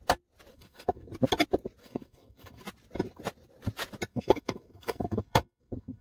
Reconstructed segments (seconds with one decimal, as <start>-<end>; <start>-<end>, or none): 0.5-1.1; 1.8-2.6; 4.1-6.0